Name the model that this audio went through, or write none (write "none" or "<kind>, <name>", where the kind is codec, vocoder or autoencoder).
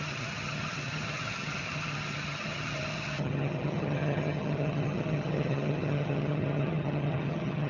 vocoder, HiFi-GAN